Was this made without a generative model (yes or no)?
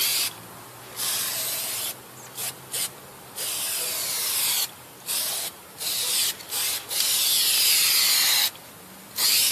yes